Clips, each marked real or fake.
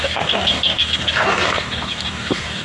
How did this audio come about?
fake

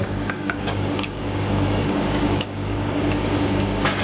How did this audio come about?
fake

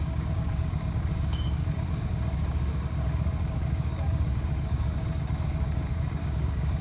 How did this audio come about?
fake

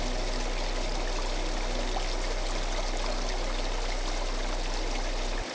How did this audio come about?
real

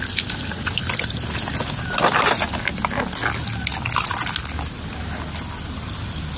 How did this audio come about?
real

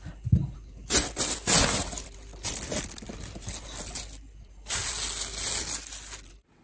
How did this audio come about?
real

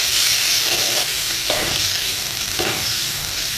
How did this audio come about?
fake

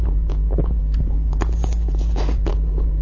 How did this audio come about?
real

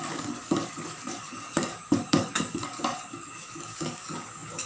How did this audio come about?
fake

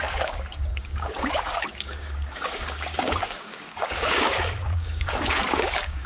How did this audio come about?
fake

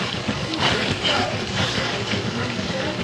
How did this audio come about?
fake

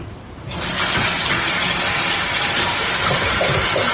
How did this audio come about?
real